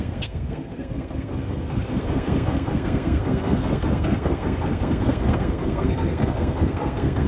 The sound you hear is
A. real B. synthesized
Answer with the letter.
B